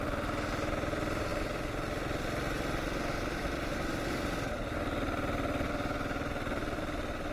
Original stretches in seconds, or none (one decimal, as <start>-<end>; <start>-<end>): 0.0-7.3